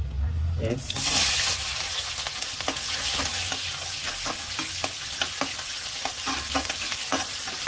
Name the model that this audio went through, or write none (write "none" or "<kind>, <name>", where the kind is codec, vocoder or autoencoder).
none